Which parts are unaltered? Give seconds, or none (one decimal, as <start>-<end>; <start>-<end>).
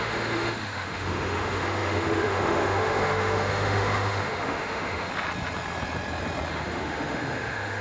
5.1-6.5